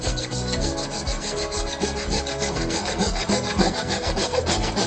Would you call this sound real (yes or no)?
no